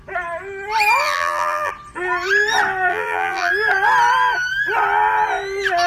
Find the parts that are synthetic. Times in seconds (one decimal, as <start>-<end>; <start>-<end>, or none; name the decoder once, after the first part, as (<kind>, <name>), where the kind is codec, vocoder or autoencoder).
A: 1.0-1.7 (vocoder, BigVGAN v2); 2.9-3.5